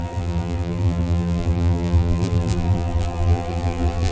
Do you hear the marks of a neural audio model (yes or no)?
yes